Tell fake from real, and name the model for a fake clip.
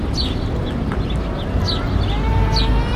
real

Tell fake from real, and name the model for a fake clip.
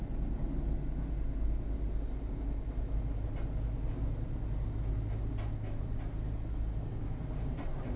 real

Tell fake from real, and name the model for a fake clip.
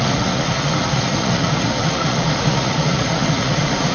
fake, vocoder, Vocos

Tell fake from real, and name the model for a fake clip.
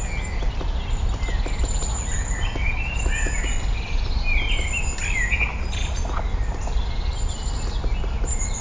real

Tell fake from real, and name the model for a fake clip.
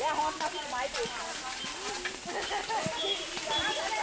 real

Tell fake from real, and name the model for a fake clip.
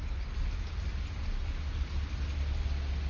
real